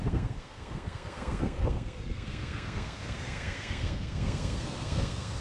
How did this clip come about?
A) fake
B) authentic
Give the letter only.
A